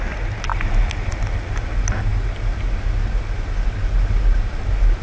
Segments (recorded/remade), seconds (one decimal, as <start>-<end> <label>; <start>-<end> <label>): 0.0-5.0 recorded